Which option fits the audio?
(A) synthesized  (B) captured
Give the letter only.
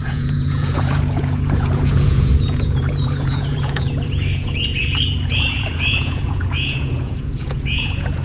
A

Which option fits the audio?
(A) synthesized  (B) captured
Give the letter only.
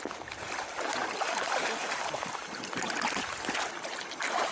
B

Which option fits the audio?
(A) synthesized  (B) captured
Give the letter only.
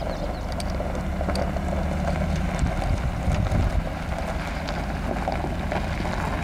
B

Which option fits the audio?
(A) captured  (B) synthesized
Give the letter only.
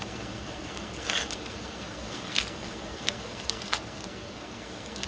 B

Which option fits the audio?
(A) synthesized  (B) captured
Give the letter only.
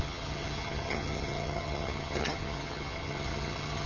A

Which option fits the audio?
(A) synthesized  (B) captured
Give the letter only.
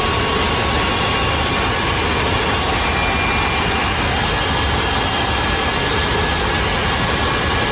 B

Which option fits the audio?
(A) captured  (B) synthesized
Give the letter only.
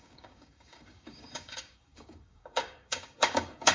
B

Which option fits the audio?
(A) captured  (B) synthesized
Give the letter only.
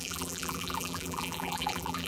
B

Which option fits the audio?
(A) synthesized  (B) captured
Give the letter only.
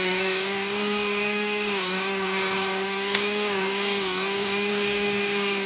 A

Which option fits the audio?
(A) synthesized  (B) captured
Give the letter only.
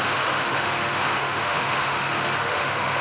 A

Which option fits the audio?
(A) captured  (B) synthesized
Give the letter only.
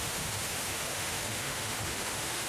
B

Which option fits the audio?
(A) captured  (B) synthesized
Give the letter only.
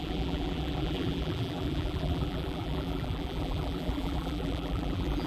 B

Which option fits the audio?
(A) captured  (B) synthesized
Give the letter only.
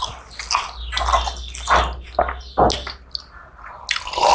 A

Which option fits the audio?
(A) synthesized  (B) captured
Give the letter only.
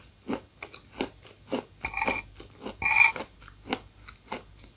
B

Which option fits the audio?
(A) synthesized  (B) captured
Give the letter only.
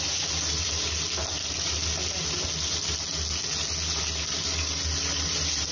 B